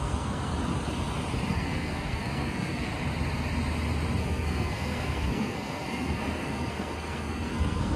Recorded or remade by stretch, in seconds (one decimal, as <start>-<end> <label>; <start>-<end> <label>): 0.0-0.5 remade; 0.5-1.5 recorded; 1.5-2.9 remade; 2.9-4.2 recorded; 4.2-8.0 remade